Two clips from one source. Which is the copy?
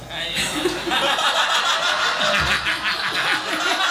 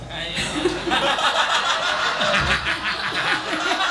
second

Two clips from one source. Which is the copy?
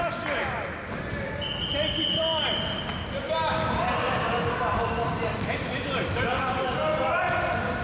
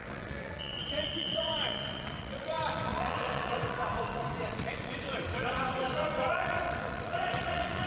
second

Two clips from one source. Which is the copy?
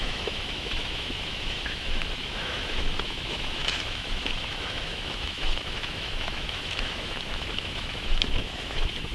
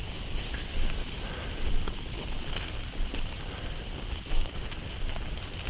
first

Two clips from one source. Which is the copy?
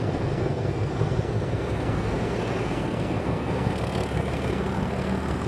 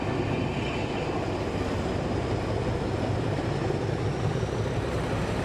first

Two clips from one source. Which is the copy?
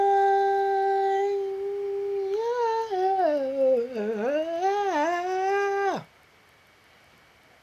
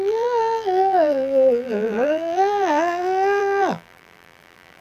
second